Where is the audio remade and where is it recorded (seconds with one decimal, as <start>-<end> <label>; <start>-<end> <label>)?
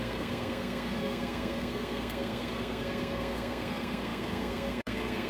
0.0-5.3 remade